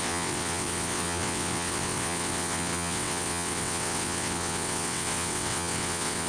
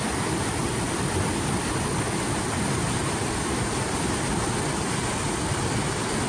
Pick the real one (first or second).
second